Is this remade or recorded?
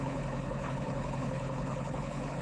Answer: remade